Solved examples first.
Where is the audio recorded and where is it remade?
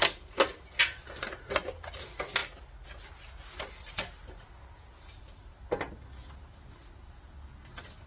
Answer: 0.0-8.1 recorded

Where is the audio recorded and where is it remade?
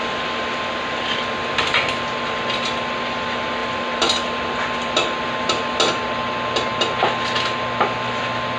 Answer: 0.0-3.6 recorded; 3.6-4.5 remade; 4.5-8.6 recorded